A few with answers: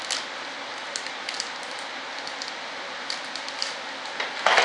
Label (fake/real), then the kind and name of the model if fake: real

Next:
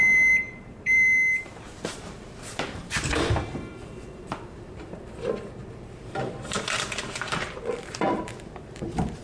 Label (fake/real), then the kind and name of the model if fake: fake, vocoder, BigVGAN v2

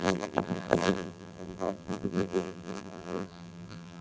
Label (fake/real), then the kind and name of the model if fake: fake, vocoder, BigVGAN v2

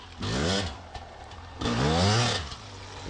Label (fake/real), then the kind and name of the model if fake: real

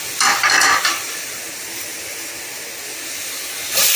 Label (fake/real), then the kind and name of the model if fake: real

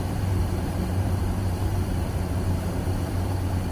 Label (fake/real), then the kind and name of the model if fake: fake, vocoder, BigVGAN v2